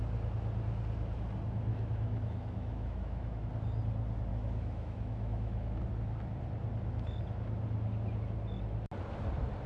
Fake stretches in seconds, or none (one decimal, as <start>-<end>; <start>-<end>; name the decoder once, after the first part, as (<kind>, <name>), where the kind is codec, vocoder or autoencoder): 1.7-3.4 (autoencoder, DAC-VAE); 4.3-5.8